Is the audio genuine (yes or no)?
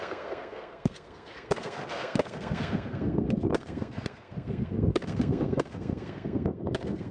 no